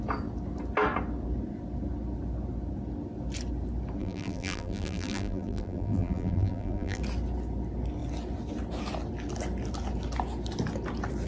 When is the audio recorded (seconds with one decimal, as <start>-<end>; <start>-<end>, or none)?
0.0-4.0; 7.0-11.3